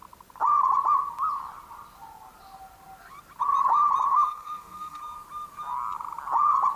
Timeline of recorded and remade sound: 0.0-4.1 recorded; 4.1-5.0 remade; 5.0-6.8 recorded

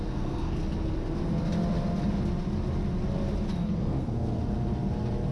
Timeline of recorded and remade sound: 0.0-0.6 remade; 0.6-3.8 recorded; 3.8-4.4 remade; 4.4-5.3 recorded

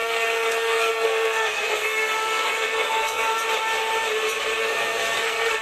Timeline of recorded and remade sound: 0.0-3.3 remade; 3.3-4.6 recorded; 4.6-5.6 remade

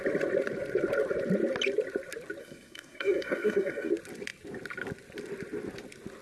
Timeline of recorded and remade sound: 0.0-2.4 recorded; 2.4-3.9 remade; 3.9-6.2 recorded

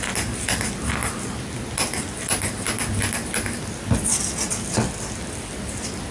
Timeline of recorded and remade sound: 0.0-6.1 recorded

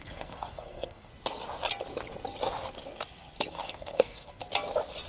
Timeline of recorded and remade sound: 0.0-1.1 remade; 1.1-3.5 recorded; 3.5-4.4 remade; 4.4-5.1 recorded